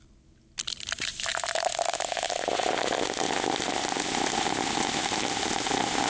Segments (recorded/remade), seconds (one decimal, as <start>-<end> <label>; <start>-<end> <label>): 0.0-6.1 recorded